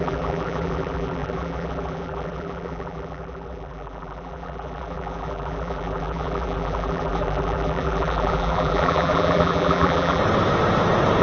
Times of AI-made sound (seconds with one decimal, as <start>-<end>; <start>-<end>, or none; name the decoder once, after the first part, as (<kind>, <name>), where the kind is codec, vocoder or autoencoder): 0.0-10.2 (vocoder, BigVGAN v2)